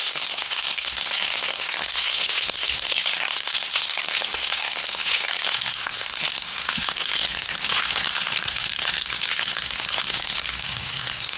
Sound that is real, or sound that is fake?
fake